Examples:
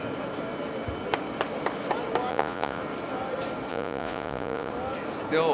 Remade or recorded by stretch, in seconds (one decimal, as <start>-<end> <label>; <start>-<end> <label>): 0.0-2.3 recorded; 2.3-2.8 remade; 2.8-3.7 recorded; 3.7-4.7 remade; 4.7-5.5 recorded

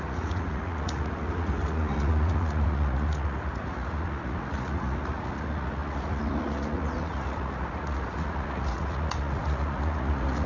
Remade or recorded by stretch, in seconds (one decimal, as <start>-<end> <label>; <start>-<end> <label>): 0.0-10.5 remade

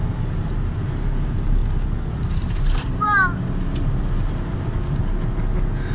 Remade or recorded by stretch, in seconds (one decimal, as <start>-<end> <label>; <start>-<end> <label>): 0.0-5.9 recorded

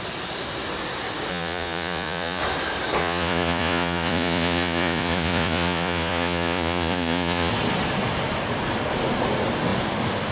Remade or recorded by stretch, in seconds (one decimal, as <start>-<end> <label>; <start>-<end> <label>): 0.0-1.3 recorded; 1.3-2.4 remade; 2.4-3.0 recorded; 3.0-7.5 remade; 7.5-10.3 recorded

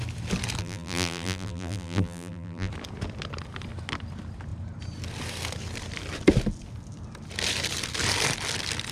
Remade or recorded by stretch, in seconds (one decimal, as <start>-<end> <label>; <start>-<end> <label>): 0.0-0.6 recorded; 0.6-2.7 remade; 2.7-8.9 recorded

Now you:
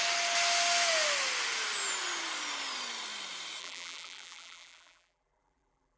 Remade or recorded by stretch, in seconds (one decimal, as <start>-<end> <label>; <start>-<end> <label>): 0.0-3.6 recorded; 3.6-6.0 remade

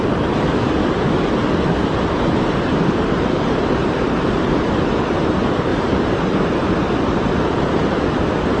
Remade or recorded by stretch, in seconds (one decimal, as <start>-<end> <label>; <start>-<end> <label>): 0.0-1.8 recorded; 1.8-5.0 remade; 5.0-5.7 recorded; 5.7-6.8 remade; 6.8-8.6 recorded